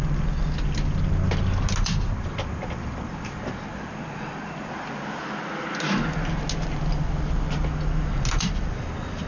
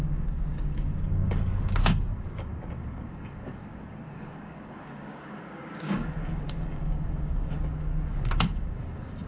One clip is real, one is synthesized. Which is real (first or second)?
first